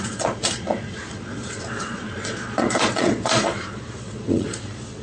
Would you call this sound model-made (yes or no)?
yes